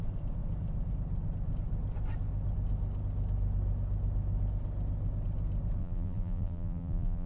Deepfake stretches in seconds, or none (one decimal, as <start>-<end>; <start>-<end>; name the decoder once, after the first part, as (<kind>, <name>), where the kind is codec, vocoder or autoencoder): 5.8-7.3 (vocoder, BigVGAN v2)